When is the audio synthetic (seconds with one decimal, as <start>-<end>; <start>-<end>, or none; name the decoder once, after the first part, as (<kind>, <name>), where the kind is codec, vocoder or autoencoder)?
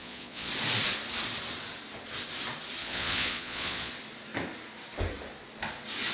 0.0-0.5 (vocoder, Vocos); 2.8-3.9